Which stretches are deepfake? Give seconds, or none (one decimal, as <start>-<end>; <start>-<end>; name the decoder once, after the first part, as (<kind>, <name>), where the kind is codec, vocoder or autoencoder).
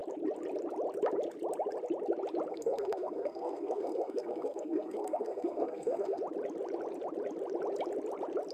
2.5-6.2 (codec, SNAC)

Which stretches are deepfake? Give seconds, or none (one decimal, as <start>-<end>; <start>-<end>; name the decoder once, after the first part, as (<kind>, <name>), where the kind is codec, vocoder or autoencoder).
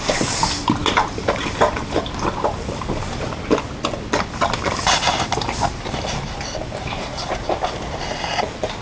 0.8-6.1 (vocoder, BigVGAN v2); 7.1-8.0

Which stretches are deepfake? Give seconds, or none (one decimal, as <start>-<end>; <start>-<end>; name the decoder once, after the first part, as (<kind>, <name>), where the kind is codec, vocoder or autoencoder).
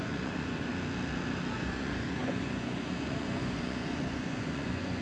0.0-0.7 (vocoder, Vocos); 1.5-5.0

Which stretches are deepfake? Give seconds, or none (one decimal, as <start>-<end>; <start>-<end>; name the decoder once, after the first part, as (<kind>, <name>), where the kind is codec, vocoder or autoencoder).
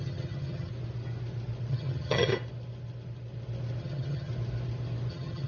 0.0-0.7 (vocoder, HiFi-GAN); 1.7-2.3; 3.8-4.3; 5.1-5.5